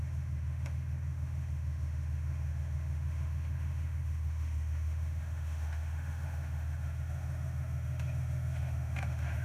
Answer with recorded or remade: remade